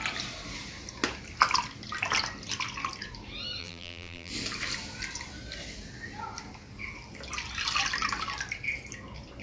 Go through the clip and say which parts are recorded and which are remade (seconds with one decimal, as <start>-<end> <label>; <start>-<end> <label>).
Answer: 0.0-3.6 recorded; 3.6-4.3 remade; 4.3-9.4 recorded